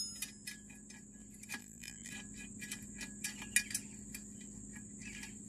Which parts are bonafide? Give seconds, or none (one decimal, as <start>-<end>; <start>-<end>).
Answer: 0.0-1.6; 2.1-5.5